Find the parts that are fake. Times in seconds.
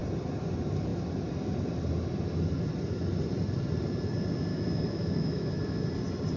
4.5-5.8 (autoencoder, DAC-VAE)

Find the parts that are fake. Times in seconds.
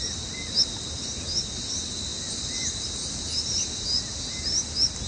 none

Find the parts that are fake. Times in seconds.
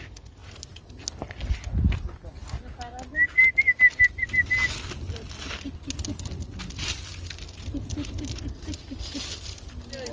none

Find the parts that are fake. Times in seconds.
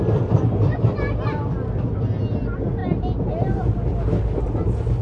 none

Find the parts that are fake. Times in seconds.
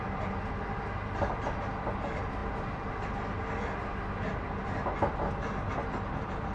none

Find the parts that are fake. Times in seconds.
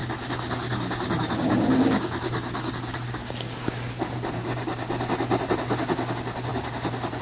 0.0-2.7 (codec, DAC); 3.2-3.9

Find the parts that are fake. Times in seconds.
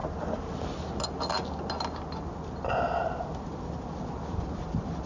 none